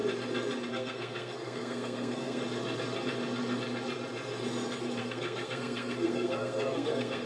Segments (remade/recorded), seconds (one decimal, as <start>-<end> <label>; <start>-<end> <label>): 0.0-0.7 recorded; 0.7-2.4 remade; 2.4-5.0 recorded; 5.0-7.3 remade